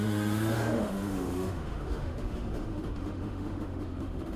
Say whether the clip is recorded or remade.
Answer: remade